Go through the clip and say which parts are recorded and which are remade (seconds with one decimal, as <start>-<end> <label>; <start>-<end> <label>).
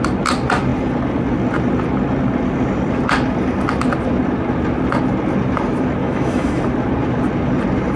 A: 0.0-6.0 recorded; 6.0-6.6 remade; 6.6-8.0 recorded